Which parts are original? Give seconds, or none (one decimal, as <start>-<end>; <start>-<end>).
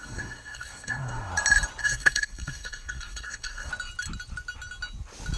1.3-1.8; 3.7-5.4